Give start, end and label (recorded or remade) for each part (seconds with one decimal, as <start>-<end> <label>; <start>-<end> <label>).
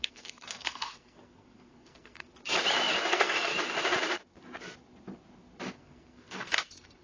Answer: 0.0-2.3 remade; 2.3-3.1 recorded; 3.1-3.5 remade; 3.5-5.7 recorded; 5.7-7.0 remade